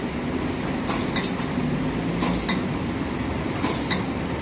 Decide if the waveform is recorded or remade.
recorded